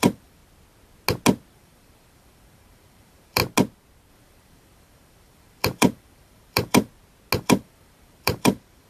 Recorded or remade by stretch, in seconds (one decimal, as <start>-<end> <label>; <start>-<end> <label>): 0.0-0.4 remade; 0.4-1.5 recorded; 1.5-3.4 remade; 3.4-4.1 recorded; 4.1-6.9 remade; 6.9-7.4 recorded; 7.4-8.9 remade